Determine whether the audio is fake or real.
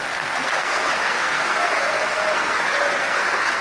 fake